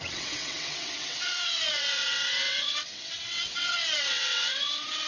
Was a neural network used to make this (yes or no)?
yes